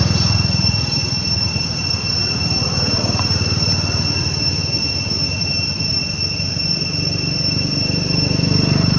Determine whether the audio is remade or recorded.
recorded